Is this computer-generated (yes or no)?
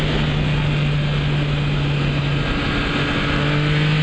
no